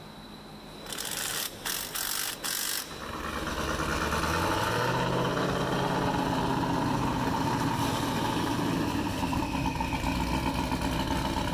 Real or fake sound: real